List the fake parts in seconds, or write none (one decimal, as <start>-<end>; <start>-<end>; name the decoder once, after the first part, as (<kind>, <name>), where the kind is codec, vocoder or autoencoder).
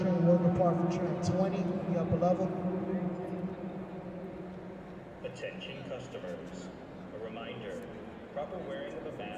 none